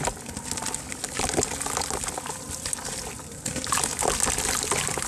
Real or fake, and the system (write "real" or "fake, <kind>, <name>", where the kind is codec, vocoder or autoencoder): real